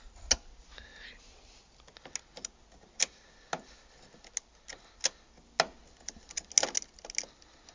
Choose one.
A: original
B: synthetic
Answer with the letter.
A